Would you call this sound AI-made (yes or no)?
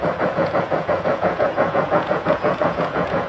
yes